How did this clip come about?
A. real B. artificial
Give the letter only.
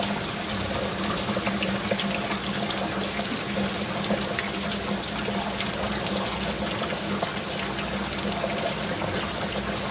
A